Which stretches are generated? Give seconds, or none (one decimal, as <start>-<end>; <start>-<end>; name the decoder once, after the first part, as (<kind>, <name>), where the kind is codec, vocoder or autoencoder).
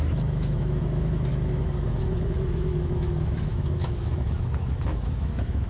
0.0-5.7 (autoencoder, DAC-VAE)